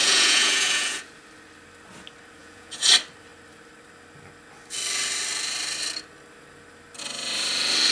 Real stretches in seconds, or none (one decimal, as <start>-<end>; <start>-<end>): 1.1-2.4; 2.9-7.9